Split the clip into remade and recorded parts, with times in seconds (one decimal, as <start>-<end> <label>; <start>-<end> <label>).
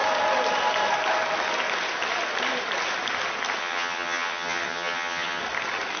0.0-3.6 recorded; 3.6-5.4 remade; 5.4-6.0 recorded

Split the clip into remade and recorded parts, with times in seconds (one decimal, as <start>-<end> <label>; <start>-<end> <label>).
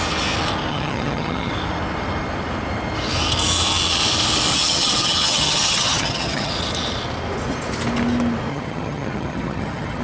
0.0-0.7 recorded; 0.7-1.5 remade; 1.5-4.5 recorded; 4.5-6.5 remade; 6.5-8.5 recorded; 8.5-10.0 remade